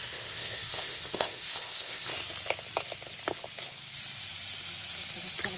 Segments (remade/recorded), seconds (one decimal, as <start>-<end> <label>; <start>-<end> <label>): 0.0-2.1 remade; 2.1-5.6 recorded